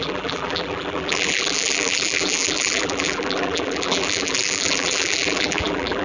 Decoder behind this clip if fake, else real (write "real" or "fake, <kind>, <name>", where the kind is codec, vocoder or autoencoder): fake, vocoder, BigVGAN v2